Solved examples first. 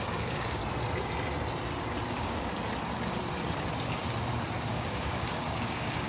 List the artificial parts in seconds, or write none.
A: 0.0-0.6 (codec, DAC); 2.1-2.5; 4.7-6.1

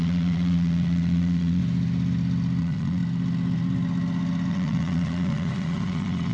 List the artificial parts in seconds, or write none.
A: 0.0-1.6 (vocoder, Vocos); 2.6-3.0; 4.5-6.3

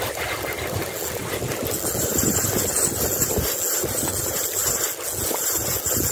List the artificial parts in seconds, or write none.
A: none

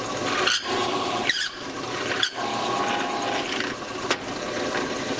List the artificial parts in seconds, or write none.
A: 0.8-2.1 (vocoder, BigVGAN v2)

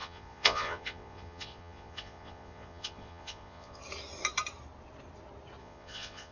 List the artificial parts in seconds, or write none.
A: 0.0-3.8 (vocoder, Vocos); 5.6-6.3

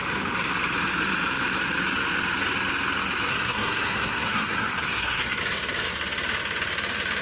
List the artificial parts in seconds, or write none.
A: 3.3-5.4 (codec, SNAC)

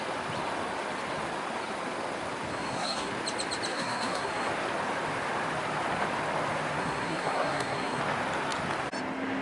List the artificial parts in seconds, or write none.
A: 2.5-3.1 (codec, SNAC); 3.7-4.5; 6.8-8.0